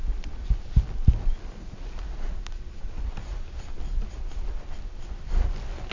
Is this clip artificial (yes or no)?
no